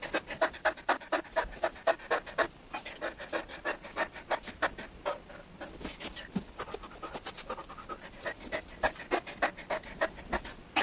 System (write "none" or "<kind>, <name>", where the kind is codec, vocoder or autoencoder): none